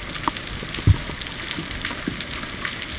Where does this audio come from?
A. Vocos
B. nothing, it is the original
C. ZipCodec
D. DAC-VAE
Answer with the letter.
B